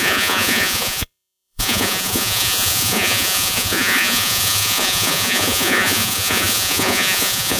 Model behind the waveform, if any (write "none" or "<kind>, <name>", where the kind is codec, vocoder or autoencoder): vocoder, Vocos